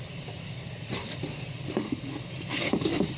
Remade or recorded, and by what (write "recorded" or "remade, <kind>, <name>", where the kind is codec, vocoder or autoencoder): recorded